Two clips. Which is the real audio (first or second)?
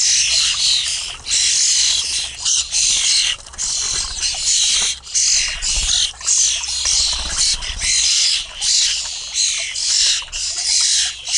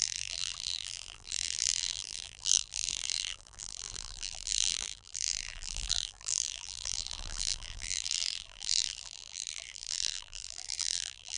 first